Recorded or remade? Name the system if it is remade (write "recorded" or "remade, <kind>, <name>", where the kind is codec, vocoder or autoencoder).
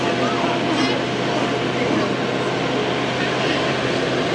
recorded